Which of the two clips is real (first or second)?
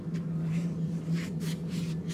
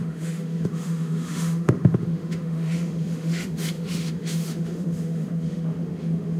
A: first